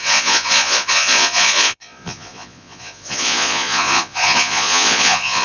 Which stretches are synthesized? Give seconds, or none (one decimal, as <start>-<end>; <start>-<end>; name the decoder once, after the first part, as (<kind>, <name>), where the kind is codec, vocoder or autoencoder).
0.0-5.4 (vocoder, Vocos)